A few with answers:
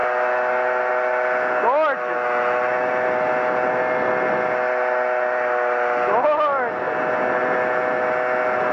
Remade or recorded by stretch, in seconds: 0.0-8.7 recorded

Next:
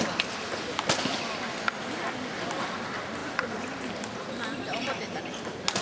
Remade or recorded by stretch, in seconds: 0.0-5.8 recorded